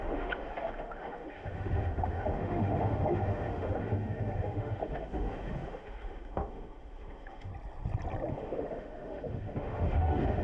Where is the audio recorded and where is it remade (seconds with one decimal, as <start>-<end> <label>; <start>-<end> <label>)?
0.0-7.5 remade; 7.5-8.3 recorded; 8.3-10.4 remade